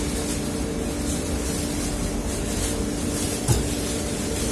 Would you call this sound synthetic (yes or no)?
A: no